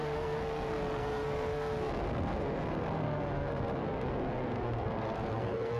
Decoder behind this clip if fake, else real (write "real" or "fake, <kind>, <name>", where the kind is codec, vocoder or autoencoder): fake, codec, SNAC